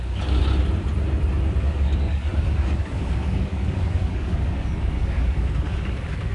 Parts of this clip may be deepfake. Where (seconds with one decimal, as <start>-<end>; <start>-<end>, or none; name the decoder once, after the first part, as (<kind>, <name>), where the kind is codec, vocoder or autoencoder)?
0.0-0.4 (codec, DAC); 1.6-6.3